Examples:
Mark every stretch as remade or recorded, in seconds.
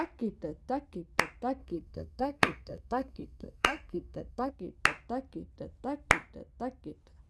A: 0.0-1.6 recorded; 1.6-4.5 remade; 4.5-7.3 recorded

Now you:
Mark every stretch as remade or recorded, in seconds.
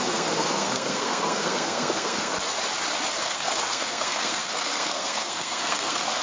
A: 0.0-2.3 remade; 2.3-3.2 recorded; 3.2-6.2 remade